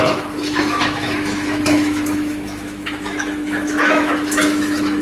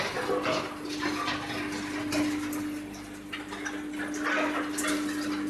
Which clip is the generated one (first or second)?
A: first